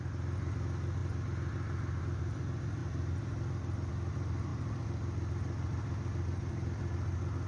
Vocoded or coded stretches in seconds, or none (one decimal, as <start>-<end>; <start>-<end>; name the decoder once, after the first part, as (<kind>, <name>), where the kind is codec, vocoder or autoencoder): none